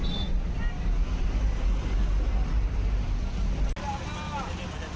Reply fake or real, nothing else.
real